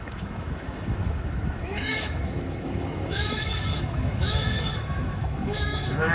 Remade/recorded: remade